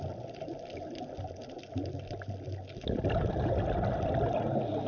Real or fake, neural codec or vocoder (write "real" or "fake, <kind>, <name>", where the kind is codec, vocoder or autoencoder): real